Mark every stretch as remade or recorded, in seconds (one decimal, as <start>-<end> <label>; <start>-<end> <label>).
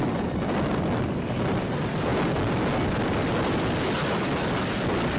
0.0-5.2 recorded